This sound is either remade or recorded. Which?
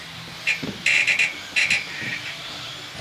recorded